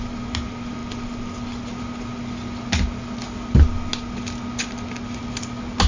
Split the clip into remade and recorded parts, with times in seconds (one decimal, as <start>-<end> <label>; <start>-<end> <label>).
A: 0.0-5.9 recorded